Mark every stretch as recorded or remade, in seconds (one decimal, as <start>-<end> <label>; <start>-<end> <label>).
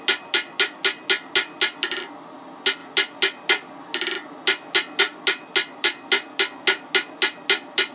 0.0-7.9 recorded